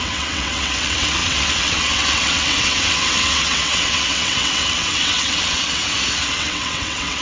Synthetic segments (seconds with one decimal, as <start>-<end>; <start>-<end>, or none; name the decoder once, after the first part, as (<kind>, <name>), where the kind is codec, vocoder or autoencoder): 0.0-5.8 (vocoder, WaveNeXt); 6.3-7.2